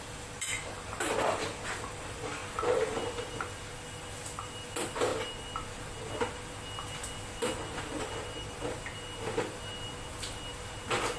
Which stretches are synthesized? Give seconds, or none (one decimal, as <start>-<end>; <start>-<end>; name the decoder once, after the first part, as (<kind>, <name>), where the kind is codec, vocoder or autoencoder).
none